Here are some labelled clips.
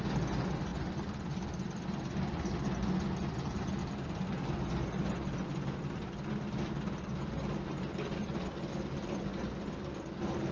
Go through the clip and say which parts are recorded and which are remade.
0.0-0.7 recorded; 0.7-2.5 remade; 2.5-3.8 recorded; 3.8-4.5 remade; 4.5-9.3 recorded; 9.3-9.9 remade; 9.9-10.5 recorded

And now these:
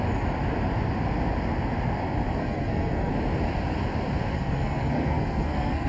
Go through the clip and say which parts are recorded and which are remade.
0.0-2.4 recorded; 2.4-3.1 remade; 3.1-4.3 recorded; 4.3-5.9 remade

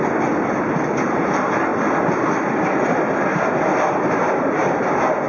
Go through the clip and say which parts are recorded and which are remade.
0.0-5.3 recorded

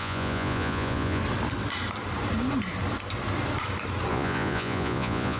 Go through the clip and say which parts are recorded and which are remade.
0.0-1.2 remade; 1.2-4.1 recorded; 4.1-5.4 remade

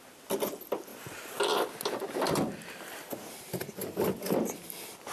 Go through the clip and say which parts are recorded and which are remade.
0.0-5.1 recorded

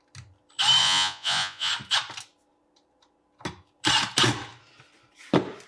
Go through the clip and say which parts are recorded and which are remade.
0.0-0.8 recorded; 0.8-1.7 remade; 1.7-5.7 recorded

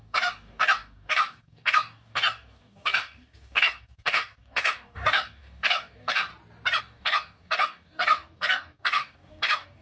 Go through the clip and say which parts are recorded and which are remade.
0.0-6.3 remade; 6.3-6.8 recorded; 6.8-9.8 remade

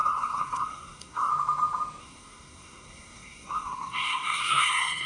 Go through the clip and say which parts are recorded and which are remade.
0.0-1.3 remade; 1.3-2.0 recorded; 2.0-5.1 remade